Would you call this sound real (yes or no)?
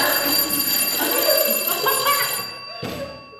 no